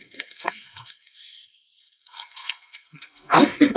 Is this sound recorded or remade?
remade